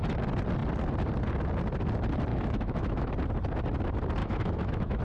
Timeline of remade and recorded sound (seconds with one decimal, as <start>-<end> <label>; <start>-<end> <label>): 0.0-2.3 recorded; 2.3-3.1 remade; 3.1-4.2 recorded; 4.2-5.0 remade